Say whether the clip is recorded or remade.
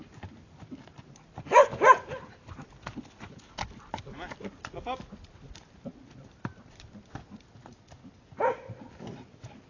recorded